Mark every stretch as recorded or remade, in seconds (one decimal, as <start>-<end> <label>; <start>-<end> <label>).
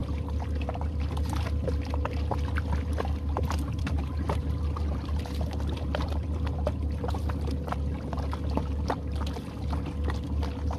0.0-10.8 recorded